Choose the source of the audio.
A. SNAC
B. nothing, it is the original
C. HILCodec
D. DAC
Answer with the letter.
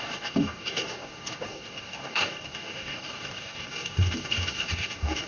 D